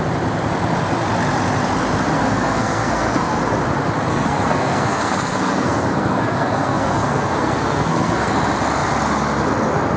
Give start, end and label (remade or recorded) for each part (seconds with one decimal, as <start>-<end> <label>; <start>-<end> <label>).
0.0-2.1 recorded; 2.1-3.4 remade; 3.4-4.1 recorded; 4.1-8.3 remade; 8.3-10.0 recorded